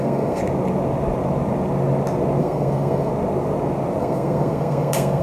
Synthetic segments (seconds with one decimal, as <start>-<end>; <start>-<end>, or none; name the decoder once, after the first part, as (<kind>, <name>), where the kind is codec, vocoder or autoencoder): 0.0-0.4 (codec, SNAC); 2.4-3.1; 4.0-5.2